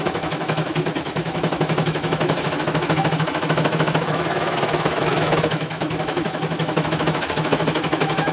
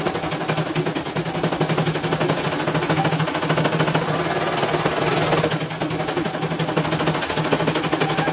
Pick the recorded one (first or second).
second